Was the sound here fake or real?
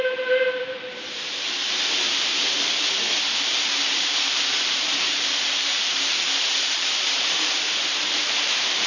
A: fake